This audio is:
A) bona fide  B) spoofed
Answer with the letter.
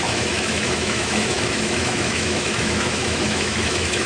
B